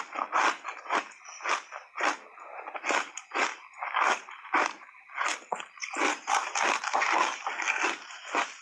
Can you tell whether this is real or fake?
fake